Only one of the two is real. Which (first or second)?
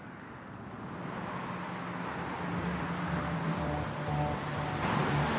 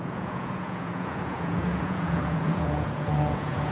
first